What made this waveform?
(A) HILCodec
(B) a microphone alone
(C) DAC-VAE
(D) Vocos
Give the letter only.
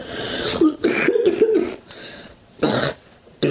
D